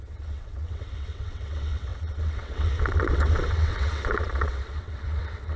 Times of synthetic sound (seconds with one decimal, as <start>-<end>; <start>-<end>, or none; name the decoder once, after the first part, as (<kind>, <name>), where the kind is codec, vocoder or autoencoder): 0.0-5.6 (vocoder, WaveNeXt)